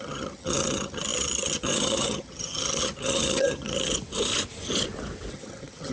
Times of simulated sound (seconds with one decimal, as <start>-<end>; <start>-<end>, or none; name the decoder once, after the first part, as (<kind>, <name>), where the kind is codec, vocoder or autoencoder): 0.0-3.9 (vocoder, HiFi-GAN); 5.3-5.9